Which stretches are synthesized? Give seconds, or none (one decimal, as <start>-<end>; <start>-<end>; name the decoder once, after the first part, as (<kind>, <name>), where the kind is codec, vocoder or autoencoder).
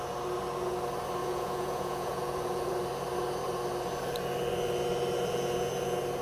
1.2-2.7 (vocoder, Vocos)